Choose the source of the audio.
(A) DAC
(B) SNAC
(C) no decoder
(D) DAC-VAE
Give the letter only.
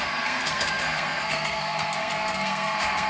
B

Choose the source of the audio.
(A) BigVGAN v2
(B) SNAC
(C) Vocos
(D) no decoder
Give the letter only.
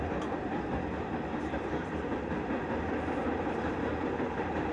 D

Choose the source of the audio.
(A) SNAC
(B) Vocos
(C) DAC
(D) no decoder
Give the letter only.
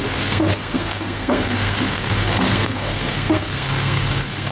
A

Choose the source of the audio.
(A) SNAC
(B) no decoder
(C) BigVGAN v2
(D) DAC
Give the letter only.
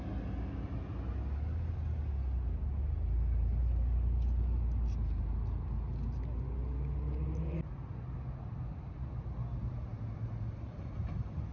B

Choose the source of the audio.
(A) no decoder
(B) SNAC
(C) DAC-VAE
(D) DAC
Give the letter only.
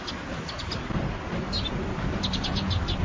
A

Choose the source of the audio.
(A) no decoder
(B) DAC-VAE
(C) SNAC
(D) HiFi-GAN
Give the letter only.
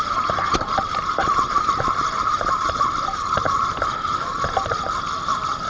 A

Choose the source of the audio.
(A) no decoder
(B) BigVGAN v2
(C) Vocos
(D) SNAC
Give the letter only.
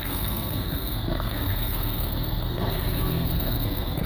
D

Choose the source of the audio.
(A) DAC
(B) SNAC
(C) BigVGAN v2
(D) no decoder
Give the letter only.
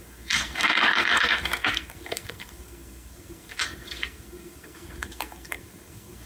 B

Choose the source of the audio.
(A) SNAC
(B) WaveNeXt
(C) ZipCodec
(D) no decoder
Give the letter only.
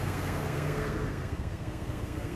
A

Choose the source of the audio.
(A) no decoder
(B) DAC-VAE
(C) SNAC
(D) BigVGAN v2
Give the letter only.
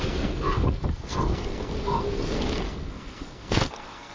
C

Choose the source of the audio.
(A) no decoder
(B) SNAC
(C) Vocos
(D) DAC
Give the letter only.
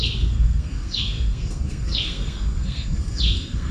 B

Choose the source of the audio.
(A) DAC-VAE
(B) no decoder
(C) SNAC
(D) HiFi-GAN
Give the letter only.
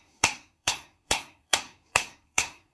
C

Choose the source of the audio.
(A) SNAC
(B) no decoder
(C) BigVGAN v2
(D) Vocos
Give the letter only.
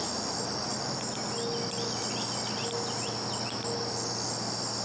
B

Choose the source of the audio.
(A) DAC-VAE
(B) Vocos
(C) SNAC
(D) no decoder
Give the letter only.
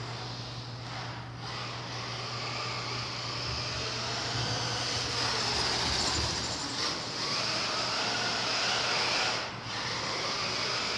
D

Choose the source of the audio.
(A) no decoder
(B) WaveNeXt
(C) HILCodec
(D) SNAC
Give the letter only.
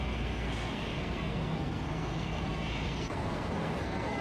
D